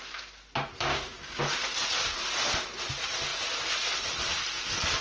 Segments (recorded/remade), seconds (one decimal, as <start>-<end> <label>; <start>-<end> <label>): 0.0-0.9 recorded; 0.9-1.4 remade; 1.4-5.0 recorded